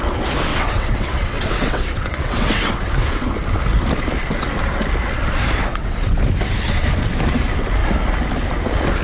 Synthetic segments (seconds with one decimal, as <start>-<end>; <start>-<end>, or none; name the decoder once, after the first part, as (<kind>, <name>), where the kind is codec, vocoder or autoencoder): 0.5-2.9 (vocoder, WaveNeXt); 5.7-6.2